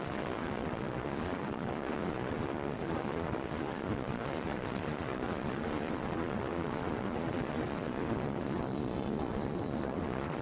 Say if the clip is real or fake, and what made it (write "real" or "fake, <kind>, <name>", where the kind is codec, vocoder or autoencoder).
fake, vocoder, Vocos